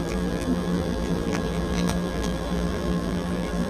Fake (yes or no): yes